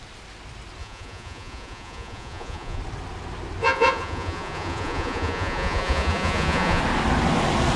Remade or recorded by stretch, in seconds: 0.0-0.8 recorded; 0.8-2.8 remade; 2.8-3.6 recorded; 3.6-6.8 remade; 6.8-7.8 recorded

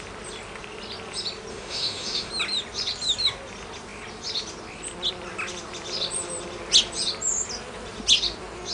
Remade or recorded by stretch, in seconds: 0.0-1.5 recorded; 1.5-2.3 remade; 2.3-8.7 recorded

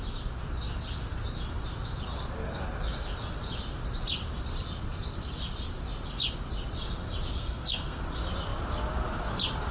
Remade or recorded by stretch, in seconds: 0.0-7.3 recorded; 7.3-8.0 remade; 8.0-9.7 recorded

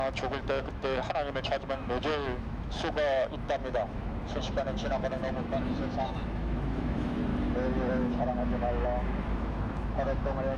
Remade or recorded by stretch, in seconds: 0.0-7.3 remade; 7.3-8.0 recorded; 8.0-10.6 remade

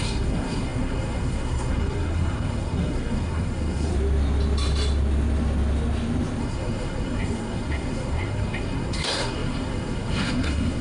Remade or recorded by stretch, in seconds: 0.0-3.9 remade; 3.9-6.4 recorded; 6.4-10.8 remade

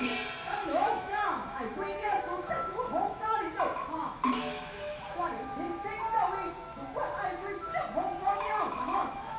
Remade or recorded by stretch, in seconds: 0.0-0.6 recorded; 0.6-3.5 remade; 3.5-4.0 recorded; 4.0-5.3 remade; 5.3-8.3 recorded; 8.3-9.4 remade

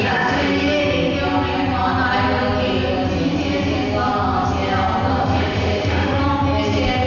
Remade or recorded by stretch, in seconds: 0.0-0.8 remade; 0.8-5.1 recorded; 5.1-6.2 remade; 6.2-7.1 recorded

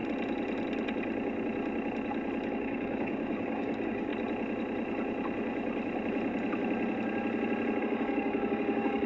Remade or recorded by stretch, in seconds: 0.0-2.5 recorded; 2.5-4.1 remade; 4.1-7.8 recorded; 7.8-9.1 remade